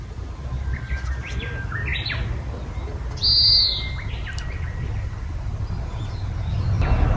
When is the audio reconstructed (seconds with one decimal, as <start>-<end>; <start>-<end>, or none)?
none

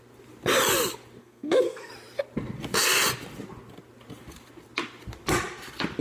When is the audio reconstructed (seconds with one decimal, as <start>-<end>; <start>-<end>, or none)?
1.2-1.9

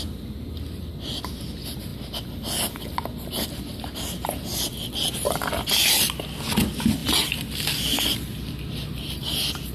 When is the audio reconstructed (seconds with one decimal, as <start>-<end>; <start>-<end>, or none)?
7.0-9.0

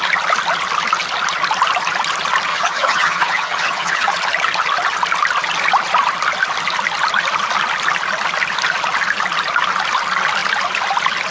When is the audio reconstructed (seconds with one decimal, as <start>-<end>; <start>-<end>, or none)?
2.5-4.1